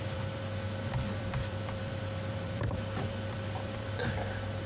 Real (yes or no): no